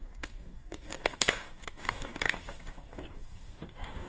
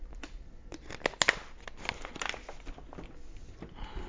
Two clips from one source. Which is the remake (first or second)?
first